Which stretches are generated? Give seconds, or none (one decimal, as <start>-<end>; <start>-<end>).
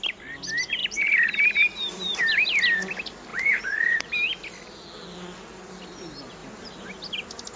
0.8-2.2; 3.3-4.3; 6.4-6.9